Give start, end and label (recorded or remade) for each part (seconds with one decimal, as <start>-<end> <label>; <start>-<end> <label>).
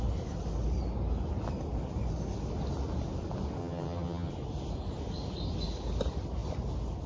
0.0-3.6 recorded; 3.6-4.3 remade; 4.3-7.1 recorded